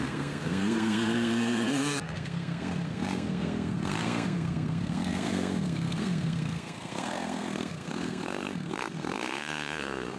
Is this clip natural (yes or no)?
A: no